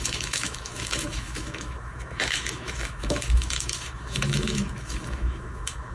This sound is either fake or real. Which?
fake